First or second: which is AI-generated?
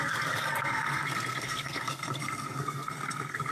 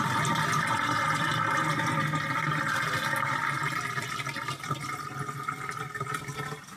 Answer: first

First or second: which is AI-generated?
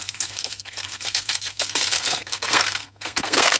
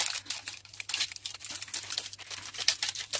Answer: first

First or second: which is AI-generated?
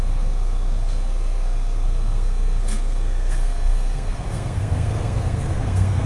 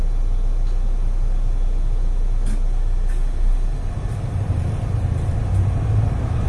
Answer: first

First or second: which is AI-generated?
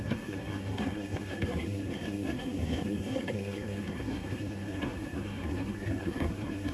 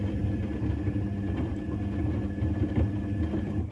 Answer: first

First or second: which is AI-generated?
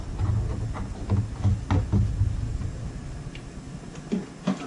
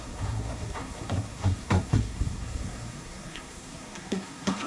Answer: second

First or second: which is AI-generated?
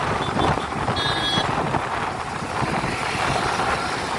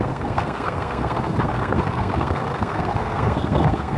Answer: second